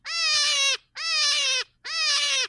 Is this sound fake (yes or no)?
no